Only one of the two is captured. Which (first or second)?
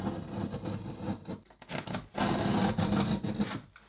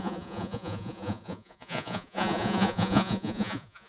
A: first